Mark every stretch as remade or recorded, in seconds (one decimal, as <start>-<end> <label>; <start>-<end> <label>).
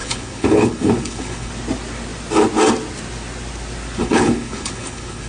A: 0.0-1.5 remade; 1.5-4.0 recorded; 4.0-5.3 remade